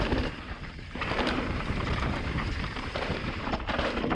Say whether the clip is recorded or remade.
remade